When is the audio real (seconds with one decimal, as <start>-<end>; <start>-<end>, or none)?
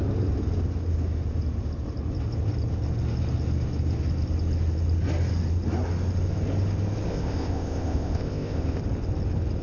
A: 0.0-7.1; 8.8-9.6